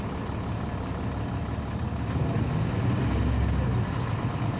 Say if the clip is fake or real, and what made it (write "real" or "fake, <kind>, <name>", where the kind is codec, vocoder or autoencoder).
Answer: real